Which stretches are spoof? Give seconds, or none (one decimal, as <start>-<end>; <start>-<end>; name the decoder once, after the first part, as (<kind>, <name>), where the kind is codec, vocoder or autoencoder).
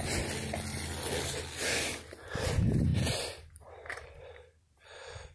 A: 2.9-4.8 (vocoder, BigVGAN v2)